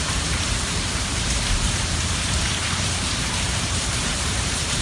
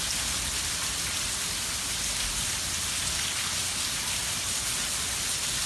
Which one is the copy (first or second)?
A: first